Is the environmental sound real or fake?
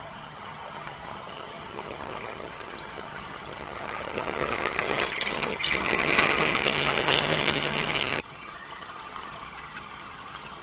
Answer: fake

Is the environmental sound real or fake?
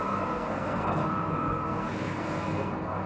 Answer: fake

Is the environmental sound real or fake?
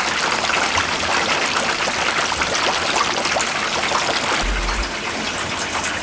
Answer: real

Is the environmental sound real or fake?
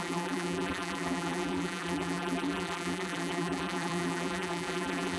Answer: fake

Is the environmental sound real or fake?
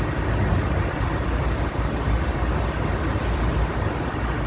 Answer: real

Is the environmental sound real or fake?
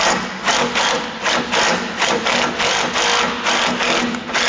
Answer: real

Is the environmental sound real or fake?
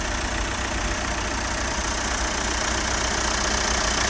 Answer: real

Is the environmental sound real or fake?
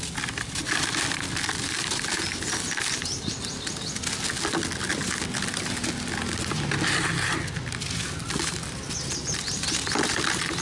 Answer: real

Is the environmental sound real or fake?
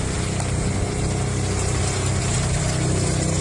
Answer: real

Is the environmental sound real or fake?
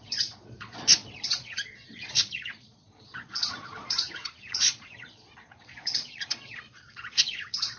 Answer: fake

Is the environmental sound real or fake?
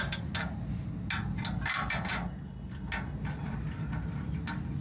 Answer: real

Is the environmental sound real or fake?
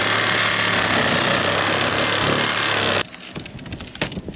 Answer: real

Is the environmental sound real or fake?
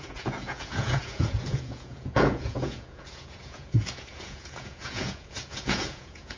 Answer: fake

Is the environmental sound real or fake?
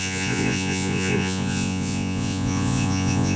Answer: fake